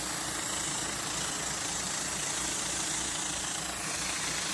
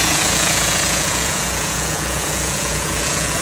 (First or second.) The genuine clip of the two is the first